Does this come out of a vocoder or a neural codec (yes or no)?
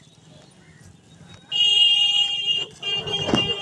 no